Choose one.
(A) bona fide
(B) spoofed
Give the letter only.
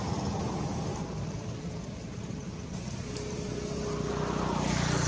A